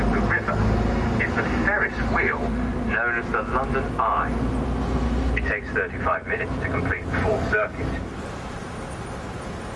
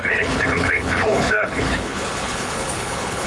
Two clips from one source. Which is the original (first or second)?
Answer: first